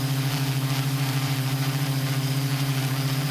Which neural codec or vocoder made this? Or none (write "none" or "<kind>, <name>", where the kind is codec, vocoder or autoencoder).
vocoder, BigVGAN v2